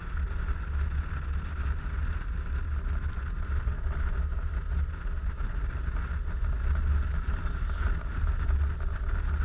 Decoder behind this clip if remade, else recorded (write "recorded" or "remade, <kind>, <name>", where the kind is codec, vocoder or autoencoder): recorded